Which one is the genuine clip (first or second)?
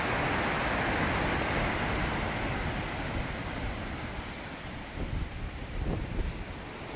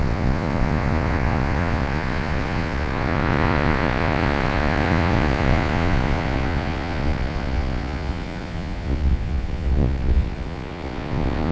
first